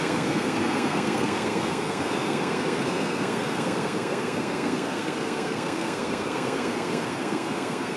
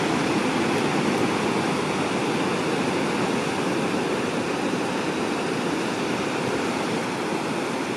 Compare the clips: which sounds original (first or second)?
second